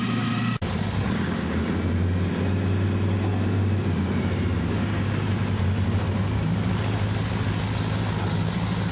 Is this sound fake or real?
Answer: real